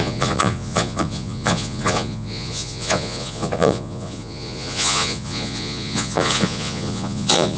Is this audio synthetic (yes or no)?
yes